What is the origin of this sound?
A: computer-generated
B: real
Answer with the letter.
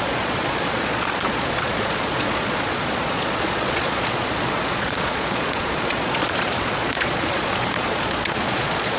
A